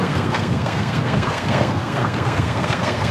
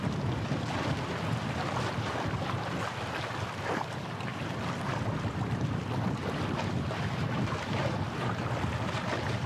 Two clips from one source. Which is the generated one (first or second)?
first